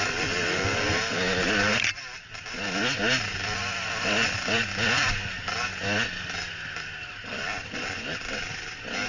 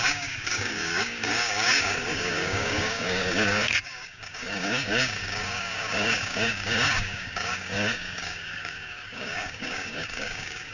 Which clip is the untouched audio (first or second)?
first